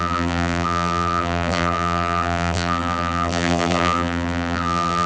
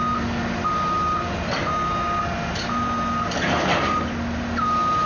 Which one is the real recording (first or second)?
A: second